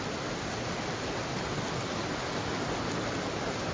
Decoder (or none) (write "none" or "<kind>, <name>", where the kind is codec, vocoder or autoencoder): none